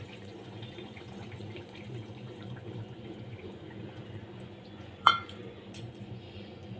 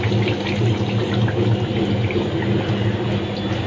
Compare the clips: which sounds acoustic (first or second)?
second